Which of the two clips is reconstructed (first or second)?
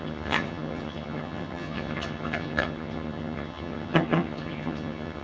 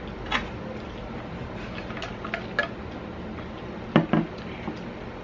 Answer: first